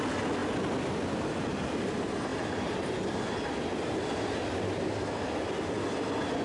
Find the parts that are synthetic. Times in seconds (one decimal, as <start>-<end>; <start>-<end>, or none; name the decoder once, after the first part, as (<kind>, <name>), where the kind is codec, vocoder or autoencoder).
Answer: none